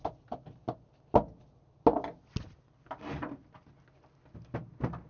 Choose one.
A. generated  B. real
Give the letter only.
B